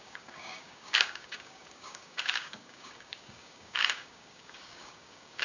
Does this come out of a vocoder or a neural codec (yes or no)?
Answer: yes